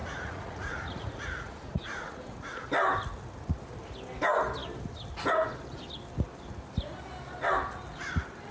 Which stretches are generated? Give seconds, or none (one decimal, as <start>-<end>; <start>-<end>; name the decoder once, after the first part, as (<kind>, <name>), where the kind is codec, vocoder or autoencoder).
0.0-2.7 (vocoder, Vocos)